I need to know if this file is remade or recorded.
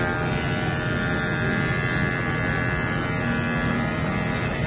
recorded